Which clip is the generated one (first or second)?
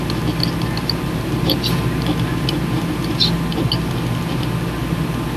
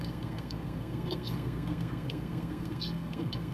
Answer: second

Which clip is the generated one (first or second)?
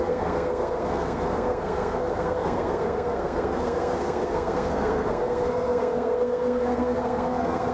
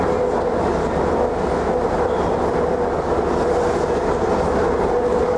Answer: first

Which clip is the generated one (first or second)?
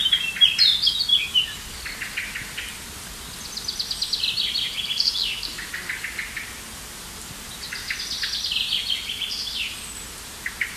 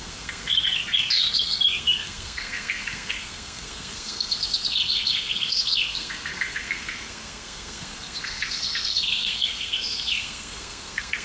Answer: second